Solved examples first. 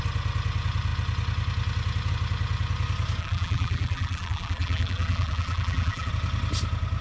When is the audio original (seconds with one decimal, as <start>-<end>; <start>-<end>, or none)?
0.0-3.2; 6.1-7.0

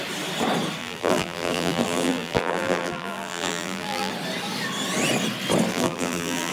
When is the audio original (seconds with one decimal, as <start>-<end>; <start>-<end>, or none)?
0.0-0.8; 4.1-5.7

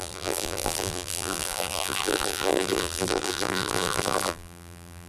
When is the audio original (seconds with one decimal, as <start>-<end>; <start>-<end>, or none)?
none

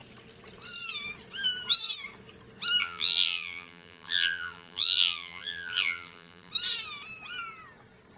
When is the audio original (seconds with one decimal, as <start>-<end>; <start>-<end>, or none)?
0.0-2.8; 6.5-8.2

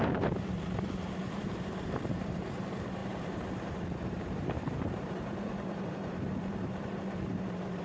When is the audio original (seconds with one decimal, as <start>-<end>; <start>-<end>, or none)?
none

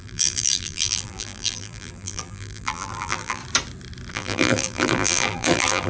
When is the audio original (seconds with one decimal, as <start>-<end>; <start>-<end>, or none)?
3.4-4.1